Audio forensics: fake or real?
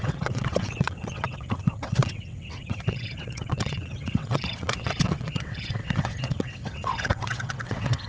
fake